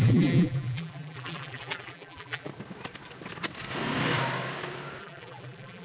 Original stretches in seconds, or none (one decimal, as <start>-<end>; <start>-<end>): 2.5-5.0